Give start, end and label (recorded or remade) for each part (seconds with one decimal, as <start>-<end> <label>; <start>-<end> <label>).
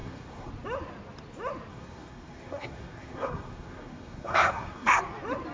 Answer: 0.0-0.5 remade; 0.5-1.7 recorded; 1.7-5.0 remade; 5.0-5.5 recorded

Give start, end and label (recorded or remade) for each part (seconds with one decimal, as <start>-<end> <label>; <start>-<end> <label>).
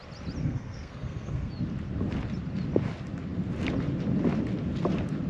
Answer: 0.0-0.4 recorded; 0.4-1.5 remade; 1.5-5.3 recorded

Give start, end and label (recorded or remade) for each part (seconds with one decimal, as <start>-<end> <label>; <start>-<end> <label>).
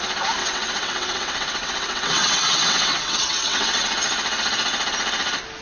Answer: 0.0-0.4 recorded; 0.4-3.8 remade; 3.8-5.6 recorded